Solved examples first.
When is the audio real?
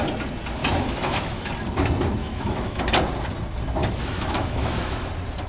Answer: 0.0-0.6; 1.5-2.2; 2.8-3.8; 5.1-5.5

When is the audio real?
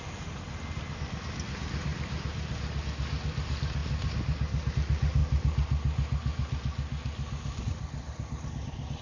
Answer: 0.0-9.0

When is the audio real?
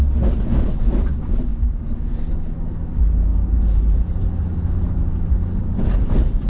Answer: 0.0-1.5; 2.0-6.5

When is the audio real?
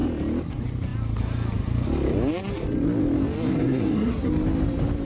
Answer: 0.0-3.5; 4.3-5.0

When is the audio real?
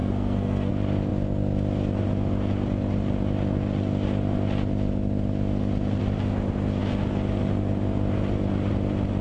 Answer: 0.7-9.2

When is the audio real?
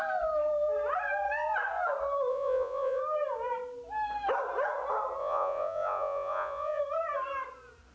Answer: 0.0-2.3; 3.0-5.2; 6.8-7.9